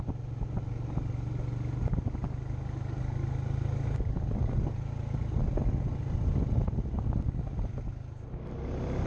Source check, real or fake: real